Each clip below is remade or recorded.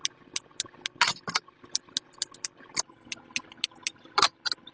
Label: recorded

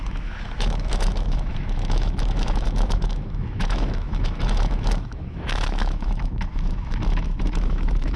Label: remade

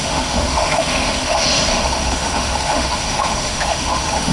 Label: remade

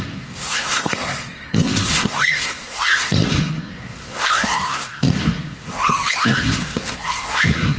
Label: remade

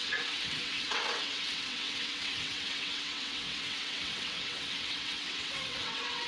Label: remade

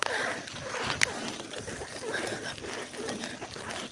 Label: recorded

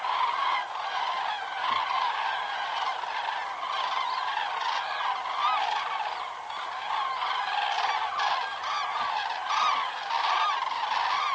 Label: recorded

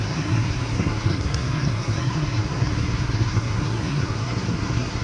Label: remade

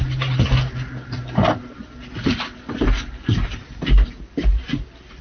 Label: recorded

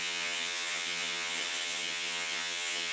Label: remade